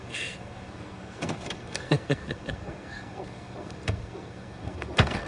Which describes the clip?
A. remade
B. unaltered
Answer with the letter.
A